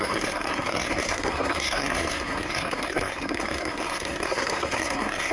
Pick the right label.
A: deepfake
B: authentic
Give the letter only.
A